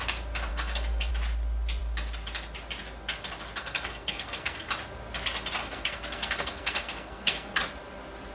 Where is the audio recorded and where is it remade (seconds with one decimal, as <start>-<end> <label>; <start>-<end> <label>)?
0.0-0.5 recorded; 0.5-1.1 remade; 1.1-3.6 recorded; 3.6-4.7 remade; 4.7-5.6 recorded; 5.6-7.6 remade; 7.6-8.3 recorded